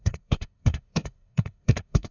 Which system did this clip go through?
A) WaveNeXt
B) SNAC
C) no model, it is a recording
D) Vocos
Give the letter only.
B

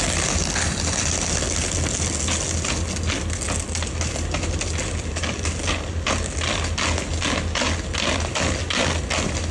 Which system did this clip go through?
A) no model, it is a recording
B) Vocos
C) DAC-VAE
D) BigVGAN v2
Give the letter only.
A